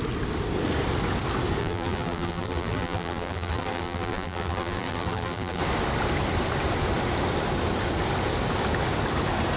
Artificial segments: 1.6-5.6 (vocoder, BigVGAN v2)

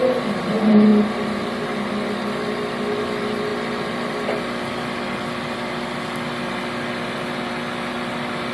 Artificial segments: 0.0-0.9 (vocoder, BigVGAN v2); 3.0-3.5; 7.9-8.5

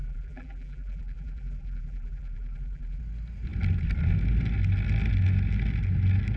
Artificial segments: 0.0-3.0 (vocoder, BigVGAN v2)

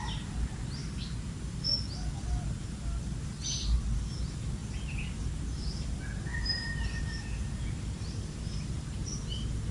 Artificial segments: 0.8-1.6 (vocoder, BigVGAN v2); 6.3-9.2

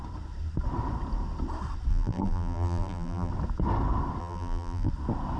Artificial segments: 1.9-3.3 (vocoder, BigVGAN v2); 4.2-4.9